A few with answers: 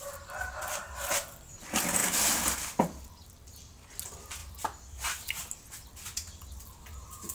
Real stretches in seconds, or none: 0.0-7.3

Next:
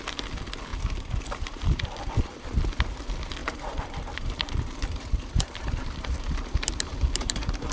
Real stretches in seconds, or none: 0.0-0.7; 2.1-3.4

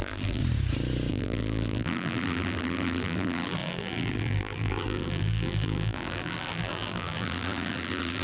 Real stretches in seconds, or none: 0.4-1.1

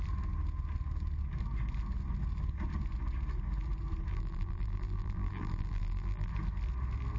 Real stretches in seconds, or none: 0.0-4.1; 6.3-7.2